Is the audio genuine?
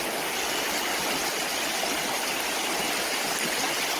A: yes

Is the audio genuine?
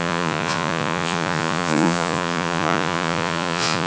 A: no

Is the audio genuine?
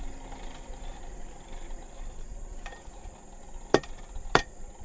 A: no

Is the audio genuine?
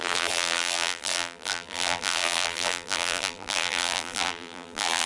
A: no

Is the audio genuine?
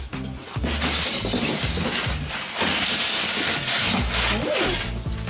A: yes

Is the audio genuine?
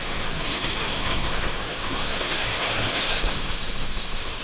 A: no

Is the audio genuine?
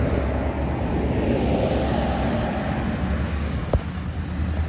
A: yes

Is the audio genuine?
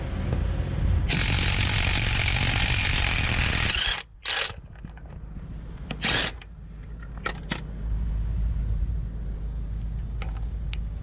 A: yes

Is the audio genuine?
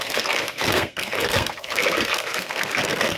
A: no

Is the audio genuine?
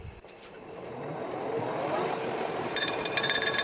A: no